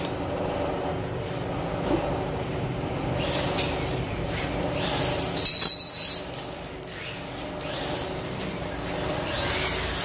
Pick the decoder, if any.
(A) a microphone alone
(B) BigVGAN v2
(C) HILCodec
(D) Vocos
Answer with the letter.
A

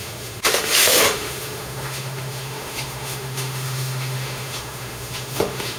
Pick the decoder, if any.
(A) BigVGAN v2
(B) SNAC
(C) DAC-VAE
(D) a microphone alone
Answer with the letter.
C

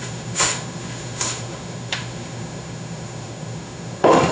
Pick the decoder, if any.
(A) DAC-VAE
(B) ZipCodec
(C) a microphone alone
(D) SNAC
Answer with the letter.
A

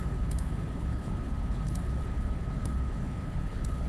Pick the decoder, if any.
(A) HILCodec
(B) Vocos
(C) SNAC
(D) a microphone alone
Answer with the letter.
A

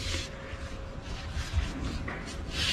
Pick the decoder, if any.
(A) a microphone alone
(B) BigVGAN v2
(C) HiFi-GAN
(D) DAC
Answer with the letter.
A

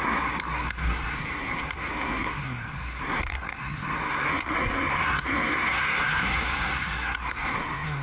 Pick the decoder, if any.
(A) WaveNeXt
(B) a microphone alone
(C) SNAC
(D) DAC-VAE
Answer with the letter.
C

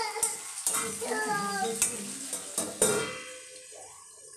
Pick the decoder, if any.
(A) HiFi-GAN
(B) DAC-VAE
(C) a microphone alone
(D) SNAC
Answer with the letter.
C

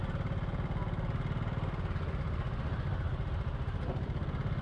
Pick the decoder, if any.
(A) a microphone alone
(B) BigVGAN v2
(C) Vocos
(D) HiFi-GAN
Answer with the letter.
A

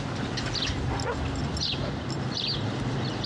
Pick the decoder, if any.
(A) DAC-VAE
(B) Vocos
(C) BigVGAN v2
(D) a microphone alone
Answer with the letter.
D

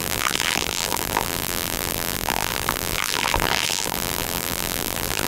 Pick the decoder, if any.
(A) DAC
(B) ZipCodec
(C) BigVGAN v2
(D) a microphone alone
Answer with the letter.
C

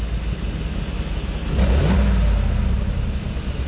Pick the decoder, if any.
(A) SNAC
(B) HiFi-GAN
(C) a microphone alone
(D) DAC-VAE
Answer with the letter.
C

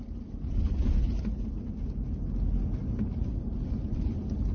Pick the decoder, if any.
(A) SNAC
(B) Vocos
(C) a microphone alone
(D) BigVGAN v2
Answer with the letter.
C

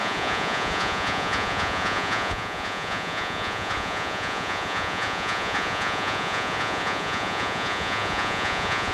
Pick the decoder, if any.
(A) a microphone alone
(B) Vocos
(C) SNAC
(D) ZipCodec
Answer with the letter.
B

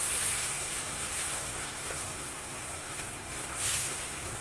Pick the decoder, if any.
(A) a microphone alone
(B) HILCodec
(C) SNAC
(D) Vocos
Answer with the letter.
C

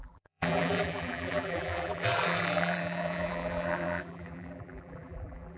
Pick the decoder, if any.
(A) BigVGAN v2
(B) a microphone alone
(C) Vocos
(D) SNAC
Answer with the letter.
A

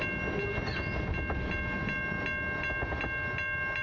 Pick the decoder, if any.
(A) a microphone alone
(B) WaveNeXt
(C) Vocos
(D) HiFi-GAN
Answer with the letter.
A